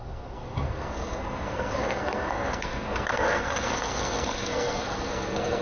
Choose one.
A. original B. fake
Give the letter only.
B